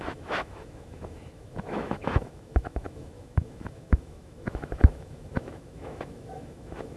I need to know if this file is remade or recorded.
remade